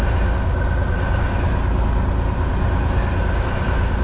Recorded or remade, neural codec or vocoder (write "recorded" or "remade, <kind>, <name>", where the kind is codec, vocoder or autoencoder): recorded